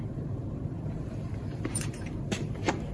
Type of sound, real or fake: fake